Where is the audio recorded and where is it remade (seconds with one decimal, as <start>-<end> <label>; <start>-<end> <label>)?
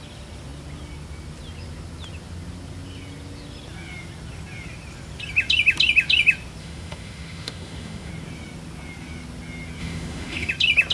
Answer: 0.0-6.6 recorded; 6.6-8.1 remade; 8.1-9.8 recorded; 9.8-10.5 remade; 10.5-10.9 recorded